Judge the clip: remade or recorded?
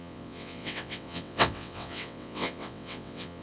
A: remade